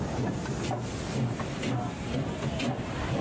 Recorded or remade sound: recorded